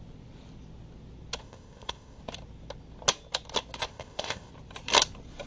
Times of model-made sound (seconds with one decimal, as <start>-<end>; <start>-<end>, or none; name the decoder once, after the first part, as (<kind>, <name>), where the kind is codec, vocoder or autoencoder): 1.4-2.2 (codec, ZipCodec); 3.8-4.5